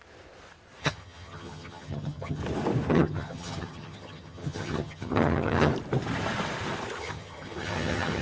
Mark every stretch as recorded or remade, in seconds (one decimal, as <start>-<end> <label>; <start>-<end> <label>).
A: 0.0-0.8 recorded; 0.8-2.4 remade; 2.4-2.9 recorded; 2.9-5.7 remade; 5.7-7.0 recorded; 7.0-8.2 remade